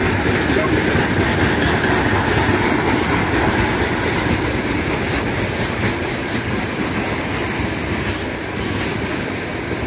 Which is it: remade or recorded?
recorded